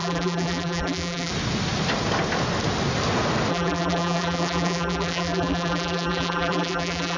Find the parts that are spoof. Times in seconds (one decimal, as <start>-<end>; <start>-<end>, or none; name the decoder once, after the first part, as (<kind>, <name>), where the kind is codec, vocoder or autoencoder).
0.0-1.3 (vocoder, BigVGAN v2); 3.5-7.2